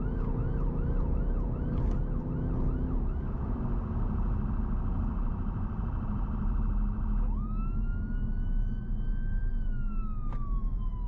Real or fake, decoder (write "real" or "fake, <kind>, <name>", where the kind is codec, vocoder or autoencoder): real